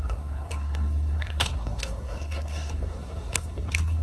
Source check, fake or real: fake